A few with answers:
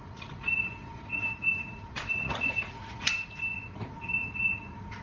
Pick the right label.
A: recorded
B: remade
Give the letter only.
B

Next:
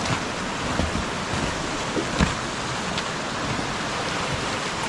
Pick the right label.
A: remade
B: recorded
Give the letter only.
B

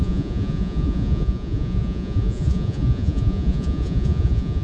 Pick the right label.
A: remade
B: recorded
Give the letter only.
A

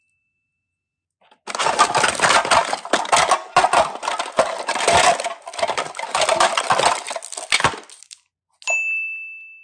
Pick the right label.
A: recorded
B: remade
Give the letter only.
A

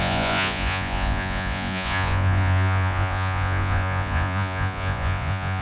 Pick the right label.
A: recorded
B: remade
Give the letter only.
B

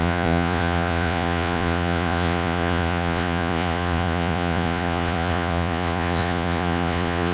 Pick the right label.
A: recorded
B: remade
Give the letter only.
B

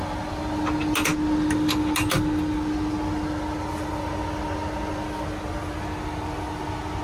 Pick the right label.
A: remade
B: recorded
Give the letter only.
B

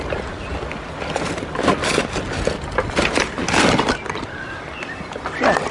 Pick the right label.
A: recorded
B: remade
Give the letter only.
A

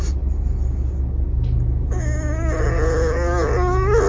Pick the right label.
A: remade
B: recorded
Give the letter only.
B